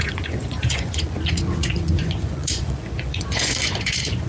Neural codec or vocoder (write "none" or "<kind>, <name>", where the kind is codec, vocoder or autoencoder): vocoder, Vocos